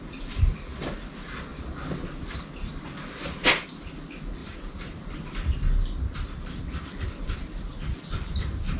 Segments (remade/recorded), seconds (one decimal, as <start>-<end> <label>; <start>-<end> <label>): 0.0-4.4 recorded; 4.4-5.2 remade; 5.2-7.7 recorded; 7.7-8.3 remade; 8.3-8.8 recorded

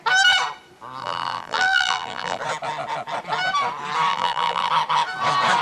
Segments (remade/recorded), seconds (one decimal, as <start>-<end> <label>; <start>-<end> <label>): 0.0-1.0 recorded; 1.0-2.4 remade; 2.4-4.1 recorded; 4.1-4.7 remade; 4.7-5.6 recorded

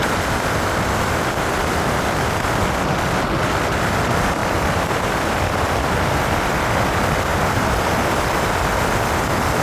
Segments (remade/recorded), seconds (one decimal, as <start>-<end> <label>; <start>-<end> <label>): 0.0-4.4 recorded; 4.4-6.1 remade; 6.1-9.6 recorded

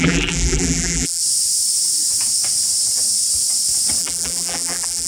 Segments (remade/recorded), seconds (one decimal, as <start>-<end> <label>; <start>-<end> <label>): 0.0-1.2 remade; 1.2-4.0 recorded; 4.0-5.1 remade

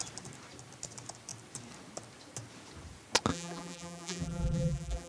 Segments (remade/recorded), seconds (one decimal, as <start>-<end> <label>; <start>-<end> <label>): 0.0-3.3 recorded; 3.3-5.1 remade

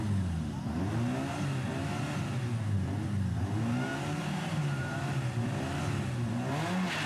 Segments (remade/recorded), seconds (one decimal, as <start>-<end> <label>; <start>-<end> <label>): 0.0-3.9 recorded; 3.9-5.8 remade; 5.8-7.1 recorded

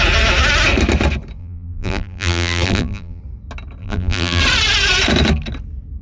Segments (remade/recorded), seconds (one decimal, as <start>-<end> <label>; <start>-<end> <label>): 0.0-1.4 recorded; 1.4-3.2 remade; 3.2-3.8 recorded; 3.8-4.4 remade; 4.4-6.0 recorded